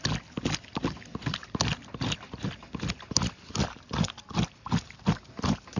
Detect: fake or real real